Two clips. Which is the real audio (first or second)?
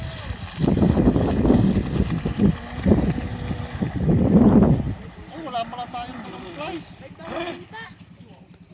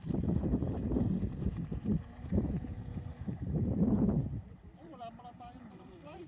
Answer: first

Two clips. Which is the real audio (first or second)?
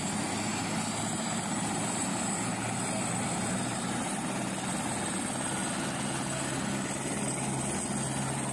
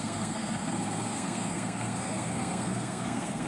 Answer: first